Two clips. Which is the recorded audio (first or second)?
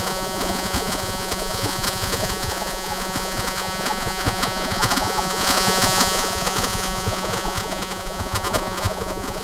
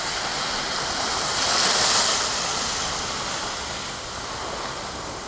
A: second